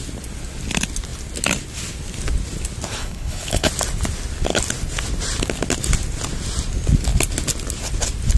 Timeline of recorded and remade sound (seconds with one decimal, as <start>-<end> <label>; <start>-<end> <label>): 0.0-3.0 recorded; 3.0-3.7 remade; 3.7-8.4 recorded